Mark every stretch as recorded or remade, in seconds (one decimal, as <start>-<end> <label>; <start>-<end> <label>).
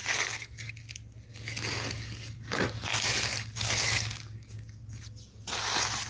0.0-0.7 remade; 0.7-1.3 recorded; 1.3-5.0 remade; 5.0-6.1 recorded